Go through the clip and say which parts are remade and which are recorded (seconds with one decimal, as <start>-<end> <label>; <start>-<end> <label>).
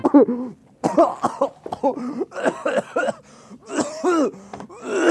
0.0-0.6 recorded; 0.6-3.7 remade; 3.7-5.1 recorded